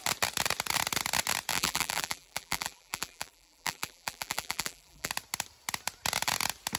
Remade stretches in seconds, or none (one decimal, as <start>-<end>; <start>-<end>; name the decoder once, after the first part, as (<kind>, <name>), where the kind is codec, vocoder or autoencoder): 1.5-5.1 (vocoder, BigVGAN v2)